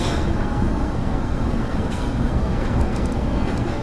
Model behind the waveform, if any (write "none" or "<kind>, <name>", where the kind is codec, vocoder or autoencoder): codec, SNAC